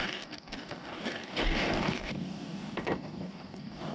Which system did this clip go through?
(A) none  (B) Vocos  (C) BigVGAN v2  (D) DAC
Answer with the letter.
D